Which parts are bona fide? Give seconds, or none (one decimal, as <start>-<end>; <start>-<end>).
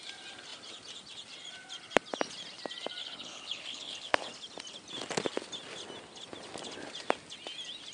0.0-3.0; 4.3-7.9